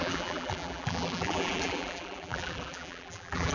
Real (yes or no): no